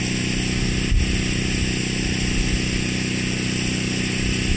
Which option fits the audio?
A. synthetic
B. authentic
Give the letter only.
B